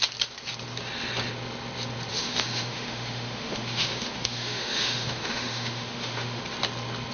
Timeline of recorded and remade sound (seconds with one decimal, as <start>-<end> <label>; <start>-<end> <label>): 0.0-2.1 recorded; 2.1-6.4 remade; 6.4-7.1 recorded